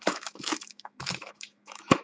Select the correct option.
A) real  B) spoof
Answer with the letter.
B